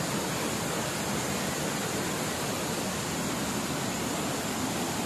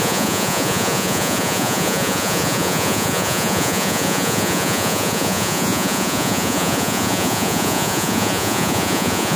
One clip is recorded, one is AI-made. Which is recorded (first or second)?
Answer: first